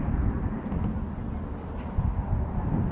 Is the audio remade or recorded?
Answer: recorded